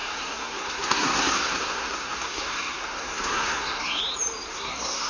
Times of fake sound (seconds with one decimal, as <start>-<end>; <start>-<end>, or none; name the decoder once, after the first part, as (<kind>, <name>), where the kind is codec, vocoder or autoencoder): 0.0-4.0 (codec, SNAC); 4.5-5.1